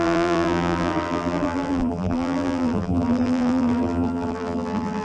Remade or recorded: remade